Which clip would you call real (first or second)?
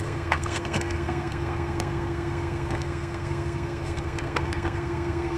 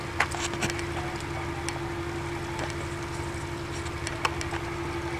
second